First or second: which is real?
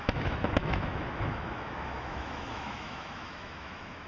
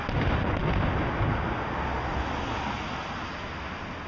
second